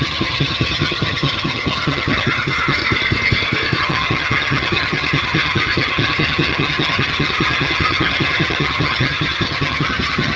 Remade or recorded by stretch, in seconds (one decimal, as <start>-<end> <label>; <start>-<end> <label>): 0.0-2.8 remade; 2.8-3.8 recorded; 3.8-10.4 remade